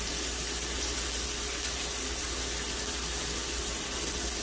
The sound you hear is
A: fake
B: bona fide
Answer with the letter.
B